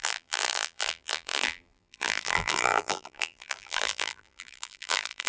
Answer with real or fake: fake